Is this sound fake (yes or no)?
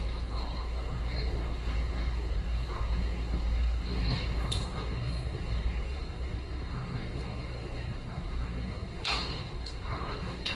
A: yes